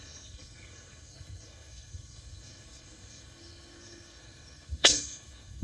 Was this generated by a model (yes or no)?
yes